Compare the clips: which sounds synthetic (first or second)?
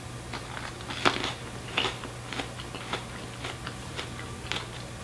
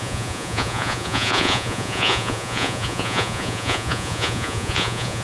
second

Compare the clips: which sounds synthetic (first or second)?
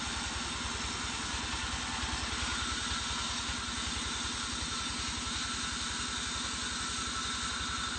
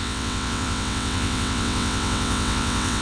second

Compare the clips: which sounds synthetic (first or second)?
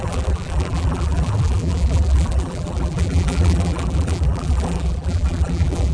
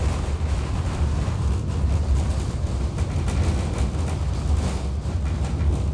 first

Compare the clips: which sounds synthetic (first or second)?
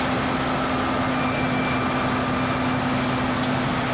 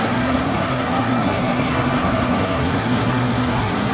second